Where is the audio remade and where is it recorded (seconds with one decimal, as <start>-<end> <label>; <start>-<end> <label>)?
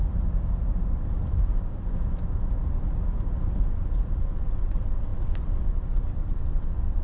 0.0-4.2 recorded; 4.2-7.0 remade